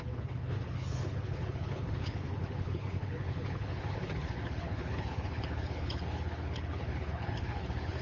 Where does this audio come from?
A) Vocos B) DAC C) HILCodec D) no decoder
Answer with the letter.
C